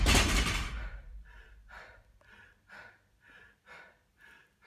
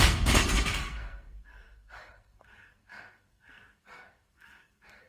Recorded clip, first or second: first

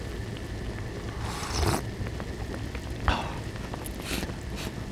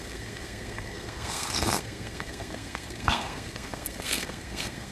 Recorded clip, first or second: first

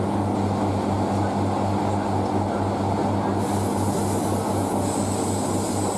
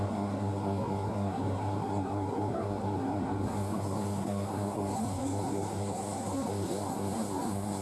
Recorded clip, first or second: first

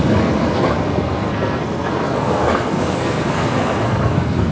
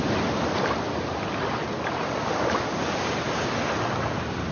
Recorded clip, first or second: second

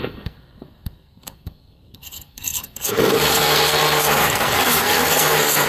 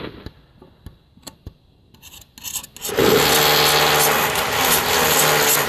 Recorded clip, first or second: second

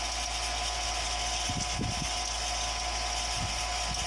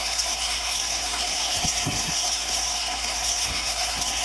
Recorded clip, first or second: first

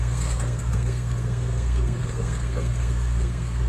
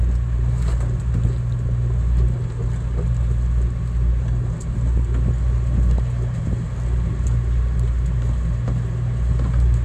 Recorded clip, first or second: second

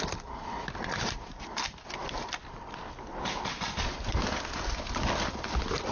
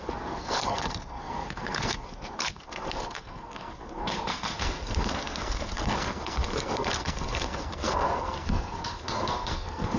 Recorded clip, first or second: first